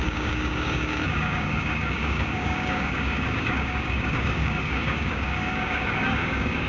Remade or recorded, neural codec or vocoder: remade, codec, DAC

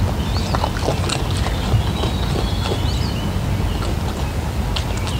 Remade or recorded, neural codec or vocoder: recorded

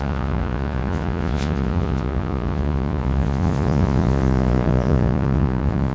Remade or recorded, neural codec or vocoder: remade, vocoder, Vocos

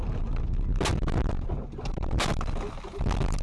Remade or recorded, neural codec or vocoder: recorded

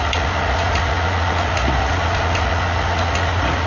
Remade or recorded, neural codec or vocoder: remade, vocoder, Vocos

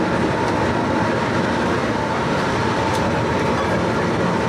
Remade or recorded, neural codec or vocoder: recorded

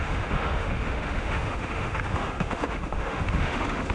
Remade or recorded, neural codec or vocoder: remade, autoencoder, DAC-VAE